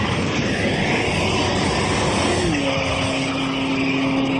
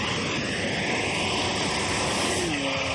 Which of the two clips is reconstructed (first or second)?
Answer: first